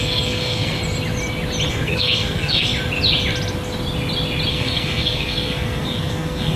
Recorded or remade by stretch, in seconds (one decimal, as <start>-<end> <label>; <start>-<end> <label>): 0.0-0.8 remade; 0.8-1.7 recorded; 1.7-2.7 remade; 2.7-4.5 recorded; 4.5-6.6 remade